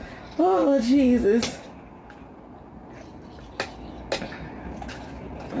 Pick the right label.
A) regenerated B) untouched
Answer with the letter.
B